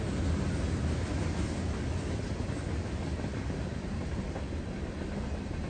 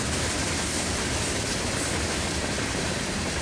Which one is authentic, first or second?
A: first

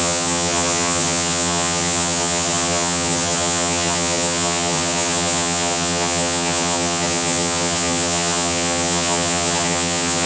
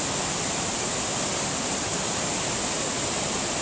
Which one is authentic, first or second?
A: second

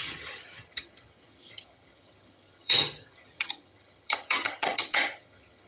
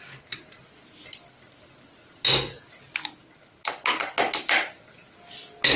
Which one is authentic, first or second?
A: second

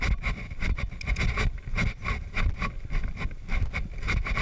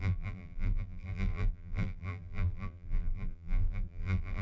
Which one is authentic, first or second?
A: first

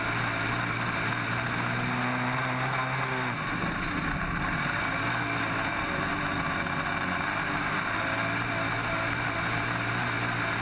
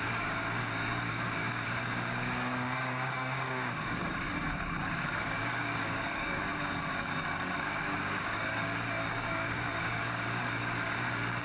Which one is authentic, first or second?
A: first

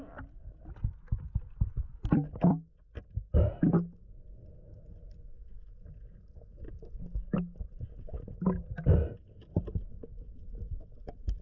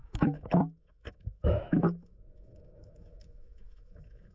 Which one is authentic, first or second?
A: first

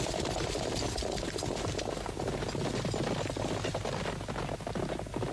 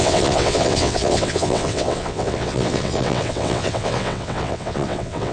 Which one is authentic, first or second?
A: first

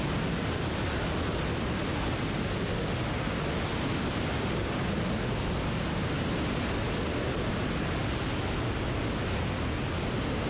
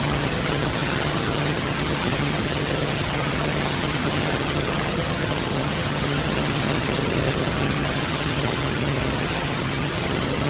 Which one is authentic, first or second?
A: first